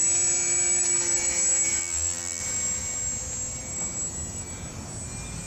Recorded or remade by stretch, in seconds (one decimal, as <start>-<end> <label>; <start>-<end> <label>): 0.0-1.8 recorded; 1.8-2.4 remade; 2.4-5.5 recorded